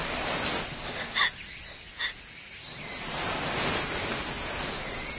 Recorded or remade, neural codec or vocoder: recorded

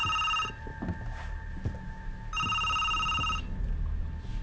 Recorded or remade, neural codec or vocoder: recorded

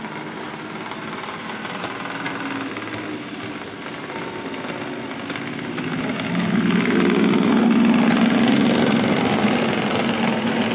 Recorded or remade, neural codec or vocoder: recorded